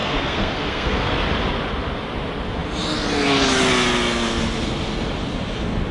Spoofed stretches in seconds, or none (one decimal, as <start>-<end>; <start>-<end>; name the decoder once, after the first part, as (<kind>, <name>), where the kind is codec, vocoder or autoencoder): 0.0-1.1 (codec, SNAC)